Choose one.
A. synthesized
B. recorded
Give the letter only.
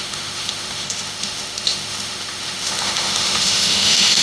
A